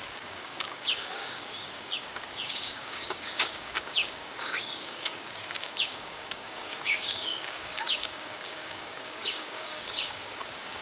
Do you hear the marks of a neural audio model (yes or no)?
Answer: yes